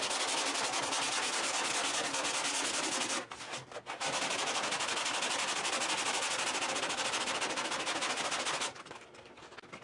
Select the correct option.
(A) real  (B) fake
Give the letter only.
A